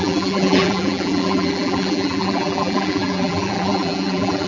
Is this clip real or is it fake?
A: fake